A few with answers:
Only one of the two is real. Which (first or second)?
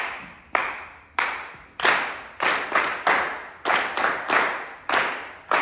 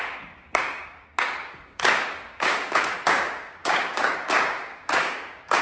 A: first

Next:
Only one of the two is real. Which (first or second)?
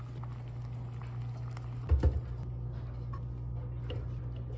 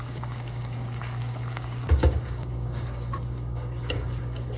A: first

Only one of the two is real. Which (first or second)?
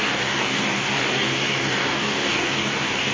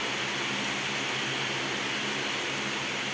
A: second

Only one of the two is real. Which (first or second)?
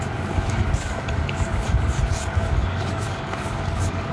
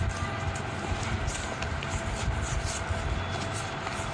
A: second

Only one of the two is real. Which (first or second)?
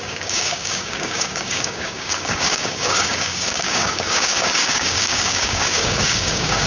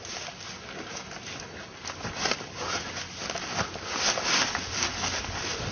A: second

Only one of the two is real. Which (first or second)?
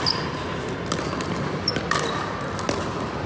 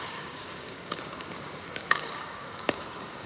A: first